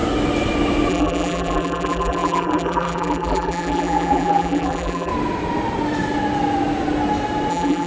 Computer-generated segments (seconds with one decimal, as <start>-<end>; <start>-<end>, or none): 0.9-5.1; 7.5-7.9